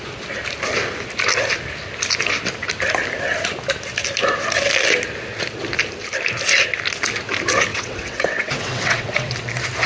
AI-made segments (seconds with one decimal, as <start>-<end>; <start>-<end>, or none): 7.7-9.3